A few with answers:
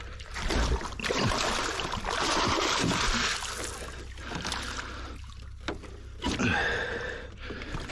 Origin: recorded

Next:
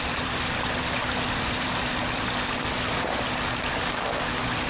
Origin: recorded